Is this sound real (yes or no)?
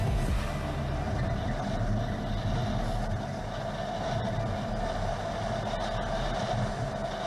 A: yes